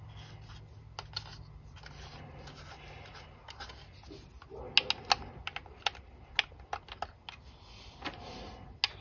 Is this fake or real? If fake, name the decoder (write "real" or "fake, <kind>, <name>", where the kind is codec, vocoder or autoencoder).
real